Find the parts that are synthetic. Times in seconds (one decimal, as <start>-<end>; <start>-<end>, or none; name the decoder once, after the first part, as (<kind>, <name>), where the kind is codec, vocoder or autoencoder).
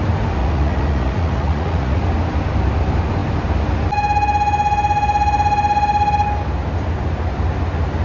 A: 0.4-2.0 (vocoder, Vocos)